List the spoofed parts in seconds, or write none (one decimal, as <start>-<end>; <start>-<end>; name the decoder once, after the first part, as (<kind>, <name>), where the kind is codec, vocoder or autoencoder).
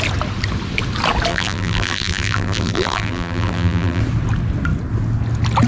1.3-4.0 (vocoder, BigVGAN v2)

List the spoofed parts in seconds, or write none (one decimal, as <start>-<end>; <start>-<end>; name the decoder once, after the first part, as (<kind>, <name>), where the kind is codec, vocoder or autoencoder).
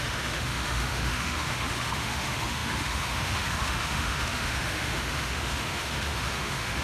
0.0-6.8 (autoencoder, DAC-VAE)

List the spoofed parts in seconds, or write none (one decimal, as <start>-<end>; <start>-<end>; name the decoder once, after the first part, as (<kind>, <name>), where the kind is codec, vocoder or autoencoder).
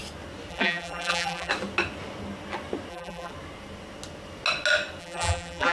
0.5-1.5 (vocoder, BigVGAN v2); 2.9-3.3; 5.0-5.7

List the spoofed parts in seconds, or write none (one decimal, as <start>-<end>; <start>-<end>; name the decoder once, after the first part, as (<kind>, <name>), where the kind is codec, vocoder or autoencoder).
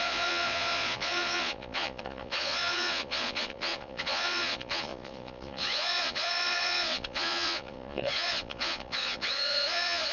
0.0-10.1 (vocoder, Vocos)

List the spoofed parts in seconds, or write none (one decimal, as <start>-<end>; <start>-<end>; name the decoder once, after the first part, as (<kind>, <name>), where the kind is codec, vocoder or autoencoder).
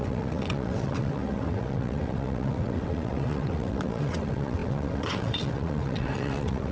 0.0-6.7 (vocoder, WaveNeXt)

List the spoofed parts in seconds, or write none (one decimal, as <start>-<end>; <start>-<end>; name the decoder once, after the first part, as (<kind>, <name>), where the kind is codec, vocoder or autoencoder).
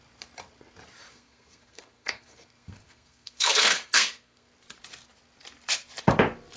1.1-4.5 (codec, SNAC)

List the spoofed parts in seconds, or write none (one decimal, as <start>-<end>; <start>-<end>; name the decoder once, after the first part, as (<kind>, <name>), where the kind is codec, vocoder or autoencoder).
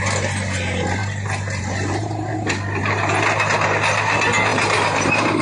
4.5-5.4 (vocoder, BigVGAN v2)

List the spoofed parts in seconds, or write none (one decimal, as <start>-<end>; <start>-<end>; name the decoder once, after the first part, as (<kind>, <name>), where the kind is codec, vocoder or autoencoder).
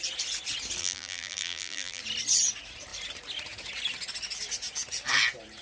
0.8-2.0 (vocoder, BigVGAN v2)